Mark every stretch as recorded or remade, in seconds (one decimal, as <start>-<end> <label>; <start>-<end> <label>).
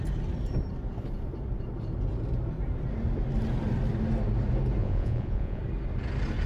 0.0-4.8 recorded; 4.8-5.6 remade; 5.6-6.5 recorded